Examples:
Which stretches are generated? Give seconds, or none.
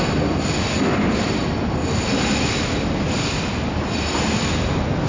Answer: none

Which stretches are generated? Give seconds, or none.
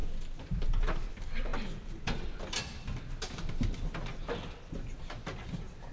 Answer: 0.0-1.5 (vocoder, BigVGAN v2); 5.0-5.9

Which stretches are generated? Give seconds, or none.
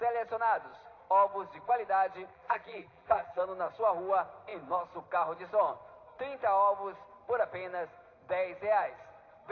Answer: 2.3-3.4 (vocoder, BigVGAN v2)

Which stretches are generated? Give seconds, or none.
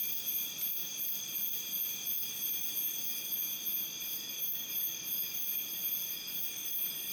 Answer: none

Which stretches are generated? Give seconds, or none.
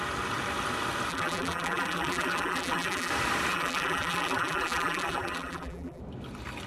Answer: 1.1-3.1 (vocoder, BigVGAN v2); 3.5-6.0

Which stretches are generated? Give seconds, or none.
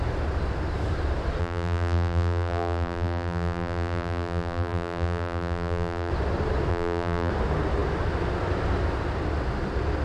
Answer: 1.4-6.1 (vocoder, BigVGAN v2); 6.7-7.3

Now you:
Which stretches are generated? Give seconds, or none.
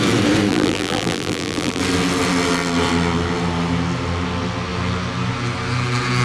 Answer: 0.5-1.8 (vocoder, BigVGAN v2)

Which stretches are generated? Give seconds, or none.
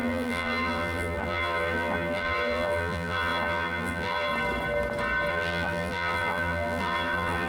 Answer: 0.0-4.3 (vocoder, BigVGAN v2); 5.3-7.5